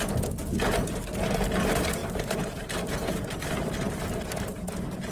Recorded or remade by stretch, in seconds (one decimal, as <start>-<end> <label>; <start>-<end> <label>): 0.0-2.0 recorded; 2.0-5.1 remade